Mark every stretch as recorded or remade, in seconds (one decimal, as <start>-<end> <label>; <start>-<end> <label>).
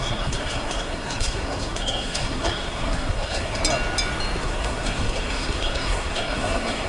0.0-3.6 remade; 3.6-4.4 recorded; 4.4-6.9 remade